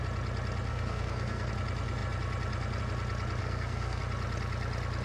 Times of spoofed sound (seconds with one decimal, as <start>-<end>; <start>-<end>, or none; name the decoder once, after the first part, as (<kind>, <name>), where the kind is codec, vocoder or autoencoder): 0.7-1.5 (codec, SNAC); 3.4-4.0